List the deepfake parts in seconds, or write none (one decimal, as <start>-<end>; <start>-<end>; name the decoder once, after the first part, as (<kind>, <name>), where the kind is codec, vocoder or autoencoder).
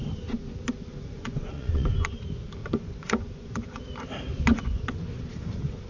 0.9-2.2 (vocoder, Vocos); 2.6-3.8; 4.3-5.1